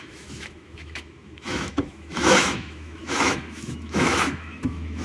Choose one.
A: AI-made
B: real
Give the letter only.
A